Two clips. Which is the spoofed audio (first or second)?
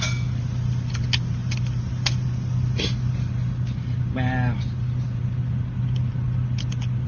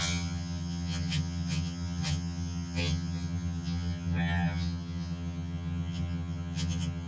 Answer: second